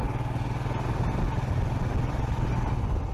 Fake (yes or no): no